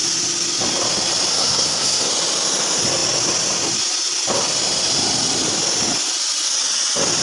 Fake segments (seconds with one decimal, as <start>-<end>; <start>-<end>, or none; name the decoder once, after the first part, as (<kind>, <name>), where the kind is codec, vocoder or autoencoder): 1.3-2.1 (codec, SNAC)